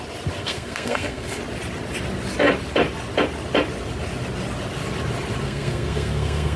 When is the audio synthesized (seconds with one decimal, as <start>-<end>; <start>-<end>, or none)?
0.4-1.4; 5.4-6.6